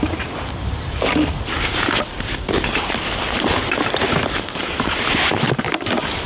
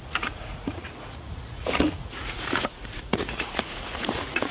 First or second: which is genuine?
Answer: first